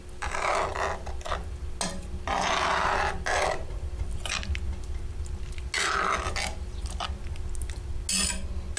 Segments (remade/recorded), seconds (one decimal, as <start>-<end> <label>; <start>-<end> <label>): 0.0-8.8 recorded